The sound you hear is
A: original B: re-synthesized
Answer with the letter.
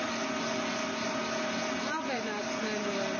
A